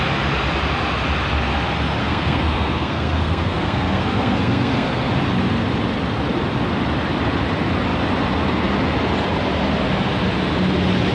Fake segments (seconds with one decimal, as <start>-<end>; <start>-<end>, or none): 2.0-5.1